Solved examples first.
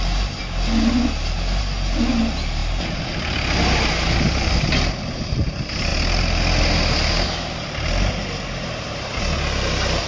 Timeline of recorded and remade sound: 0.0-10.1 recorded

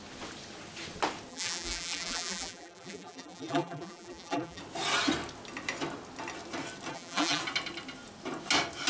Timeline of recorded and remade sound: 0.0-1.3 recorded; 1.3-4.6 remade; 4.6-6.9 recorded; 6.9-7.4 remade; 7.4-8.9 recorded

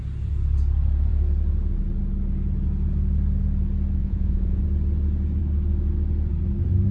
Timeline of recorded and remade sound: 0.0-4.0 recorded; 4.0-4.6 remade; 4.6-6.9 recorded

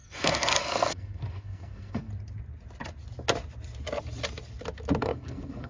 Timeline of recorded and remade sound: 0.0-2.1 remade; 2.1-5.0 recorded; 5.0-5.7 remade